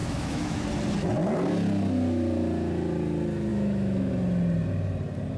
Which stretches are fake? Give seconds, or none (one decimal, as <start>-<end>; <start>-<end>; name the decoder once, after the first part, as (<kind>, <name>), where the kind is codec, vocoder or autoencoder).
0.0-0.6 (autoencoder, DAC-VAE); 3.5-4.1